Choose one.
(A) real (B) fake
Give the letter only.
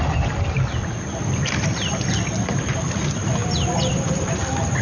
A